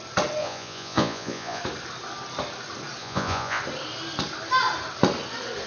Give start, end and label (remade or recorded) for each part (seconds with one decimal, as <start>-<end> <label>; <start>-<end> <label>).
0.0-0.4 recorded; 0.4-1.6 remade; 1.6-3.0 recorded; 3.0-3.6 remade; 3.6-5.7 recorded